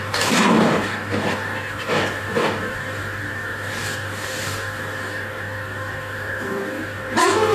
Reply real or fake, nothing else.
fake